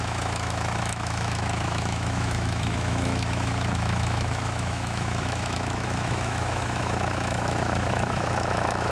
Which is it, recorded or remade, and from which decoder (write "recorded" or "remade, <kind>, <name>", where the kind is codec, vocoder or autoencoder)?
remade, autoencoder, DAC-VAE